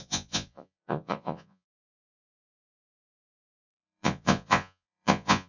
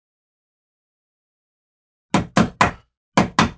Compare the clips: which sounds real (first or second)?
second